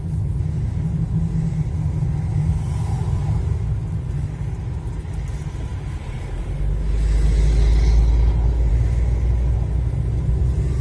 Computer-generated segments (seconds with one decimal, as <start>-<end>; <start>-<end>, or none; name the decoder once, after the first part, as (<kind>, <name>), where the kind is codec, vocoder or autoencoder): none